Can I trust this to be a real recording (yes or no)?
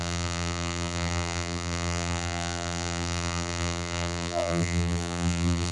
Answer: no